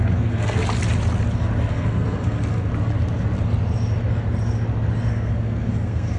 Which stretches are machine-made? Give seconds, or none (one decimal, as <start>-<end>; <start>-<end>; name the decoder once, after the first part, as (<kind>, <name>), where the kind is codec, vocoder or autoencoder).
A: 0.0-0.6 (codec, SNAC); 1.7-2.7; 5.1-6.2